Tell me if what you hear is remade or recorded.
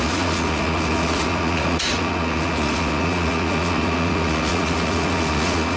remade